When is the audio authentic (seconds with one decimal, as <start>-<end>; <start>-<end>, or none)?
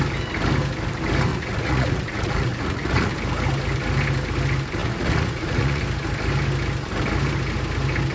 0.0-1.3; 3.1-4.8; 5.8-8.1